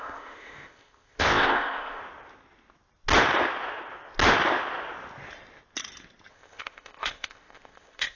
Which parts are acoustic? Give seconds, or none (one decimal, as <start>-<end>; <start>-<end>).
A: 2.0-6.3